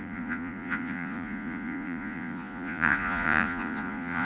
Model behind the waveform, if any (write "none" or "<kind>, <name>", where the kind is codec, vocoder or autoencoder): vocoder, Vocos